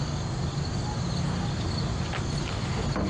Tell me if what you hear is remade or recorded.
recorded